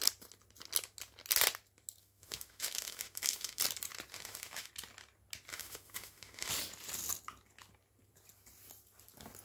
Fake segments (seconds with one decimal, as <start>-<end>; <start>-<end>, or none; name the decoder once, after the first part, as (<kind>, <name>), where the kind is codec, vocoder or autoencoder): 2.0-3.6 (autoencoder, DAC-VAE); 4.1-4.7; 5.5-6.5